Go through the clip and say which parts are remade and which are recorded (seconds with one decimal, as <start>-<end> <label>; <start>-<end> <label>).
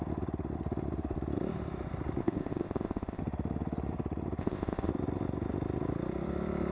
0.0-2.2 recorded; 2.2-3.2 remade; 3.2-4.4 recorded; 4.4-4.9 remade; 4.9-6.7 recorded